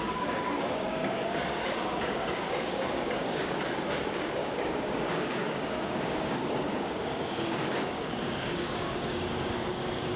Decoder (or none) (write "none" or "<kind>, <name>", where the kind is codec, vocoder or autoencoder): codec, DAC